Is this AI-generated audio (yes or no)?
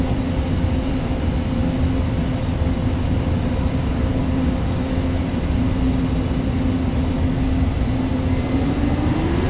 no